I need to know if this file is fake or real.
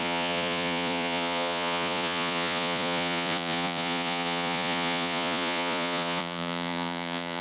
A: fake